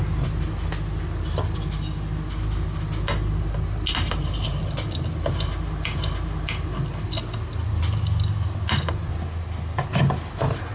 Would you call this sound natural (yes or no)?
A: yes